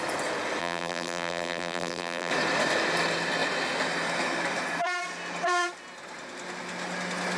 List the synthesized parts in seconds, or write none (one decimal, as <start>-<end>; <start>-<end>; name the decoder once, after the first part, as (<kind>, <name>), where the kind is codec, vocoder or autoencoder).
0.6-2.3 (vocoder, BigVGAN v2)